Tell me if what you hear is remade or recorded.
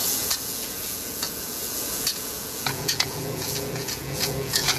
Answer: remade